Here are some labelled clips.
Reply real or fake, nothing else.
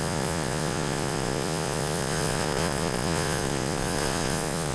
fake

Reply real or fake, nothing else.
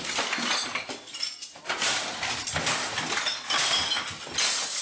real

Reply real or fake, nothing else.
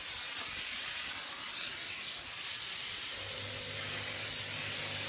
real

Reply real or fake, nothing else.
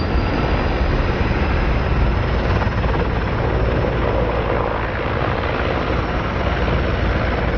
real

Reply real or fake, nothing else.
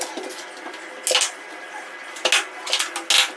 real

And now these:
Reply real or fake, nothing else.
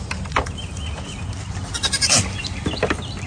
real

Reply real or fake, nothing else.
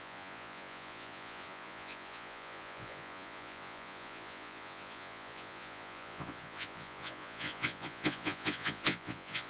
fake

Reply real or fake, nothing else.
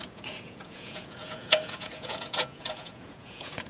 fake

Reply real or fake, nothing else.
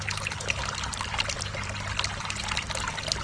real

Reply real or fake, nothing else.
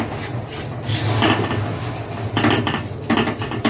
real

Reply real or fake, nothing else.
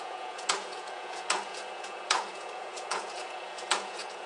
fake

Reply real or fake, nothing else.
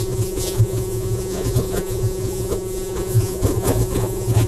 fake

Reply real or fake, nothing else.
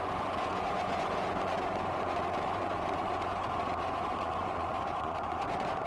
fake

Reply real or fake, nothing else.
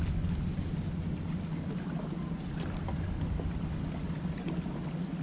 real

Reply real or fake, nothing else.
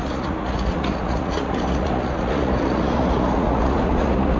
fake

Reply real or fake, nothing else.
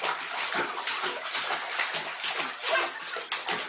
real